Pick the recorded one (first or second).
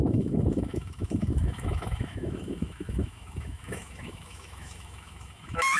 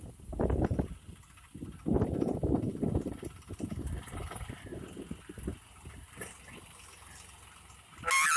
second